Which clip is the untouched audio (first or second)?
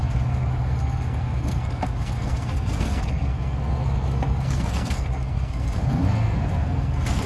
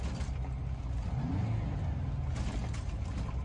second